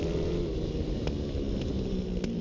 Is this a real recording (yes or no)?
yes